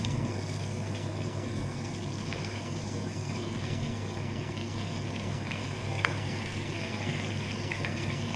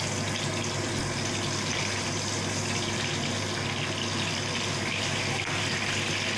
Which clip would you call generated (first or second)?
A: first